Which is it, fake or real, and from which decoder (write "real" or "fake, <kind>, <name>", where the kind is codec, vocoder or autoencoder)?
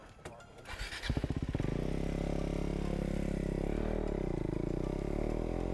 real